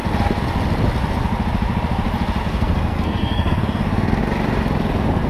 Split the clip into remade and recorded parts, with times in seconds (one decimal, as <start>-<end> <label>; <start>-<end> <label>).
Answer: 0.0-2.4 recorded; 2.4-4.2 remade; 4.2-5.3 recorded